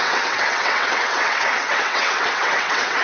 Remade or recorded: remade